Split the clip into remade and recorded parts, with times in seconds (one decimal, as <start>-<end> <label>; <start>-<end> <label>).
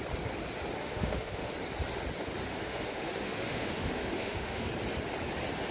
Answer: 0.0-0.8 recorded; 0.8-1.5 remade; 1.5-2.5 recorded; 2.5-4.7 remade; 4.7-5.7 recorded